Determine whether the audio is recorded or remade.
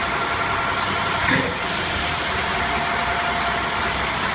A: recorded